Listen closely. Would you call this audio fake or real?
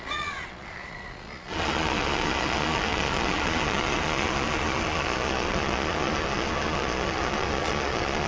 fake